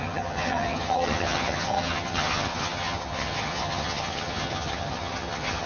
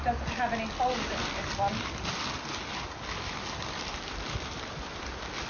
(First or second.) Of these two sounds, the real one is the second